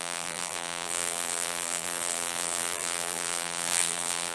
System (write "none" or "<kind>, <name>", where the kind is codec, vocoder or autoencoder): vocoder, BigVGAN v2